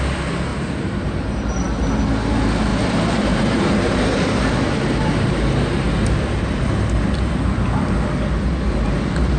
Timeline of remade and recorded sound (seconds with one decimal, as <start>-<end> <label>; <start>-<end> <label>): 0.0-0.5 recorded; 0.5-1.4 remade; 1.4-2.7 recorded; 2.7-5.4 remade; 5.4-9.4 recorded